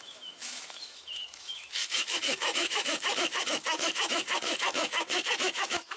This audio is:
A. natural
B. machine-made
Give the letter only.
B